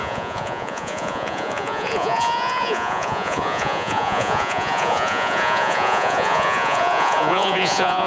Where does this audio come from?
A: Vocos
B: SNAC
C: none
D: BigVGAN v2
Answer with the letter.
A